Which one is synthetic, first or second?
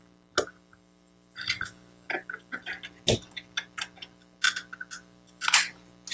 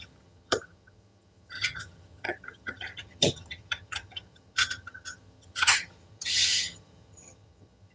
second